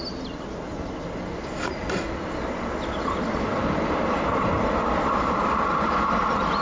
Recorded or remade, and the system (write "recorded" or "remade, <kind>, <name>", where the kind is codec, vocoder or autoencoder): recorded